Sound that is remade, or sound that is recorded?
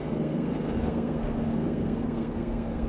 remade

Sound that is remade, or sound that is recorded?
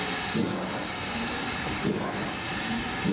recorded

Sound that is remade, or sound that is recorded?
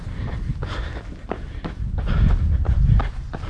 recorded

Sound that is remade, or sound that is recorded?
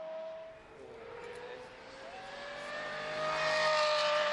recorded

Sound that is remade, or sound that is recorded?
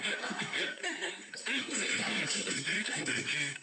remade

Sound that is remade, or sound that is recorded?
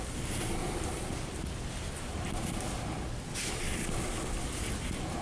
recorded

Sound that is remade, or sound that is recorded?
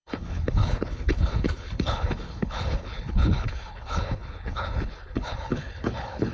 remade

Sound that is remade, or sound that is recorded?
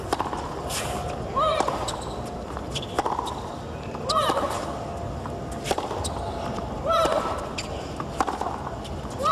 recorded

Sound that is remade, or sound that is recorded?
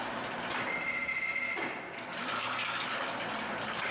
recorded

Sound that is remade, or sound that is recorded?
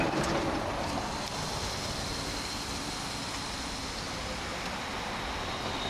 recorded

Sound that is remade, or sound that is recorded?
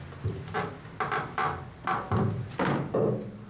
recorded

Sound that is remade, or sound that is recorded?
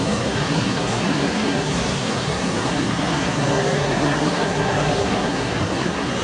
remade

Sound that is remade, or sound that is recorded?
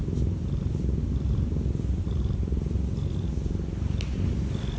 recorded